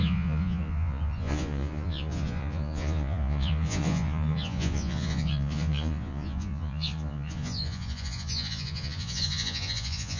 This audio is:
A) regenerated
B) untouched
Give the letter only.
A